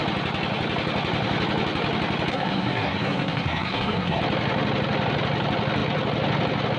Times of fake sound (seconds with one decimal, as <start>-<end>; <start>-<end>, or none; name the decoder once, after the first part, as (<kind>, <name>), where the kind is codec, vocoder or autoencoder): 2.3-4.2 (codec, SNAC)